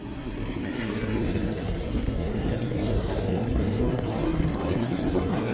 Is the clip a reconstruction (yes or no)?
yes